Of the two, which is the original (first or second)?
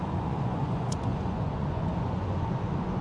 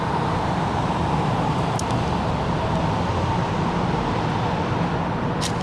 second